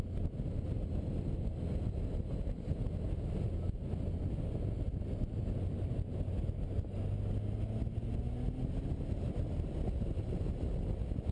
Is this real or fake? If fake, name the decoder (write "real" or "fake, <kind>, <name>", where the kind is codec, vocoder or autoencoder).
real